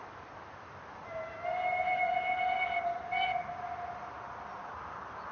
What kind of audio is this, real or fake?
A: real